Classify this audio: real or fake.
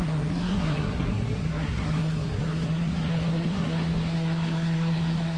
fake